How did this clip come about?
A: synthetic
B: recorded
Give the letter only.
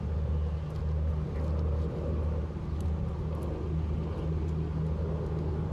B